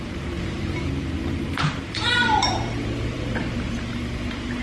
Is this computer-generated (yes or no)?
yes